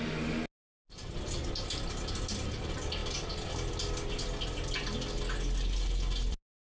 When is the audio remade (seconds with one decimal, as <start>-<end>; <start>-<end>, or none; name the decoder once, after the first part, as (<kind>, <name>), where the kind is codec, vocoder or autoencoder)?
none